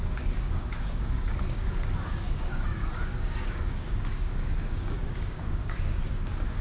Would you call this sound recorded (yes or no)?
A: no